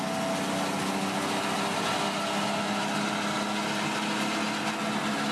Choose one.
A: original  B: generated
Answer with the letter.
A